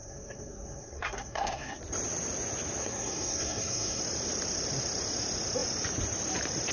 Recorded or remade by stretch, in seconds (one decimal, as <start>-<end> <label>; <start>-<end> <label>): 0.0-1.8 remade; 1.8-2.8 recorded; 2.8-4.0 remade; 4.0-6.7 recorded